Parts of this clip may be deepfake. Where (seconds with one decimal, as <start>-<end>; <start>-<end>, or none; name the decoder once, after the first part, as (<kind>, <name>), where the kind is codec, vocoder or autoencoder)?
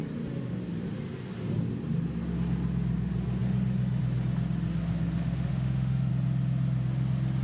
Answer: 5.5-6.1 (autoencoder, DAC-VAE)